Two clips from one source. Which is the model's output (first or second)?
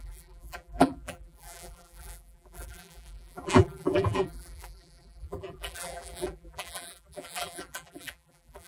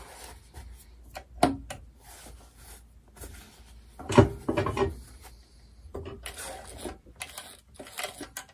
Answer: first